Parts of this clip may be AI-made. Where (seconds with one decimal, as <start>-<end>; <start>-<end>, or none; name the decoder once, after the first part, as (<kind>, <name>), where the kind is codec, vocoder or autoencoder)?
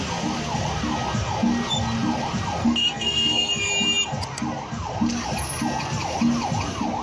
2.6-3.7 (codec, SNAC)